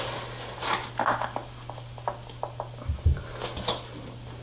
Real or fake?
real